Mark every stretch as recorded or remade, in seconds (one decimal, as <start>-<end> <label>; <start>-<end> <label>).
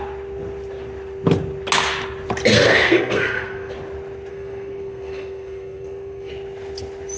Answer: 0.0-2.5 recorded; 2.5-3.7 remade; 3.7-4.3 recorded; 4.3-6.3 remade; 6.3-7.2 recorded